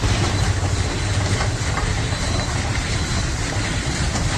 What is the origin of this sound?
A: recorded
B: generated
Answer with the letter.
B